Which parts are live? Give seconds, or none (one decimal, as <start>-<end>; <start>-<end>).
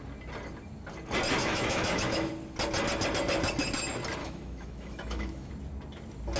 0.0-1.4; 2.3-4.2; 5.5-6.4